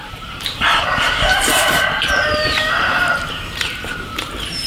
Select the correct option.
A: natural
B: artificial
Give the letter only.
B